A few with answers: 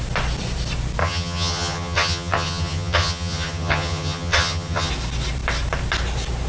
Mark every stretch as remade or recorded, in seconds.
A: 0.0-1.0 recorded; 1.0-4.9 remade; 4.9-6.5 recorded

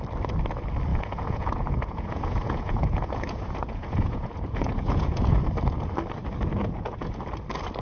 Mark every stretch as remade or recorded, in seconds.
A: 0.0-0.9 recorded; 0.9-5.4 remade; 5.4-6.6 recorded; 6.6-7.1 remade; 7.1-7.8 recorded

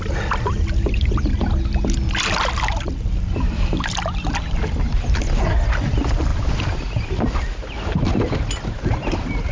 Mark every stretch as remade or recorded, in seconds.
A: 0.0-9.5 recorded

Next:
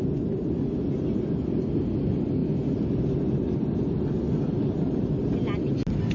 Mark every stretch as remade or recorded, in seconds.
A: 0.0-6.1 recorded

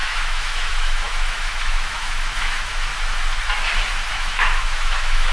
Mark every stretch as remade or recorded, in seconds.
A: 0.0-2.9 remade; 2.9-4.1 recorded; 4.1-5.3 remade

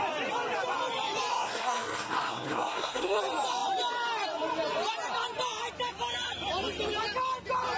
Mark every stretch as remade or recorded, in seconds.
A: 0.0-1.3 recorded; 1.3-3.2 remade; 3.2-7.8 recorded